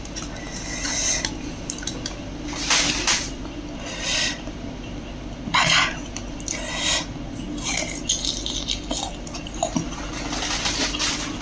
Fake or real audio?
real